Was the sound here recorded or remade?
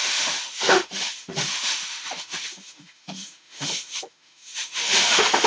remade